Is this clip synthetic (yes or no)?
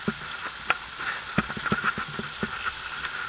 no